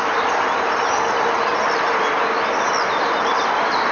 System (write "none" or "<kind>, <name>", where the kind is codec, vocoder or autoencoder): none